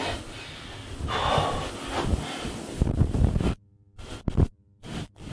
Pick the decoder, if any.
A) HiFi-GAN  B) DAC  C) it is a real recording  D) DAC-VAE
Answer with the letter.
C